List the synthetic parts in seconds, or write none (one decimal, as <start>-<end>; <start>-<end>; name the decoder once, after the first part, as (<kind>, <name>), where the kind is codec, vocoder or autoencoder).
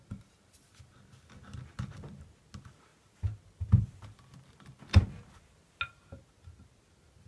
none